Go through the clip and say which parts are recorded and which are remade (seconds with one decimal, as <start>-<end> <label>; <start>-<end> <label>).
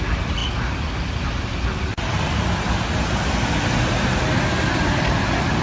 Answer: 0.0-5.6 recorded